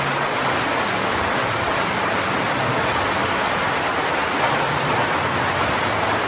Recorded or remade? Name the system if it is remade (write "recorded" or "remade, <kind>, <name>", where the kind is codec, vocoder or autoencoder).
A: recorded